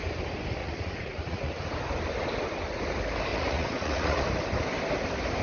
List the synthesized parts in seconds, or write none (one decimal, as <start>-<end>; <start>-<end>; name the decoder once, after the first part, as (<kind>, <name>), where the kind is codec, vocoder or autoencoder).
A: 0.6-1.6 (vocoder, Vocos); 3.3-4.2

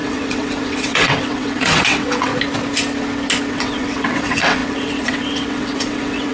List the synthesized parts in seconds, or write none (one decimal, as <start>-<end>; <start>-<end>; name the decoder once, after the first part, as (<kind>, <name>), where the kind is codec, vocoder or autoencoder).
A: 0.0-2.3 (vocoder, WaveNeXt); 3.5-6.3